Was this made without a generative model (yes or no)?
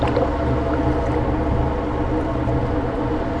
yes